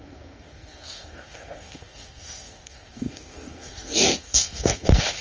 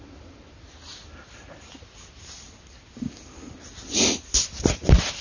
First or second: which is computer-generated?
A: first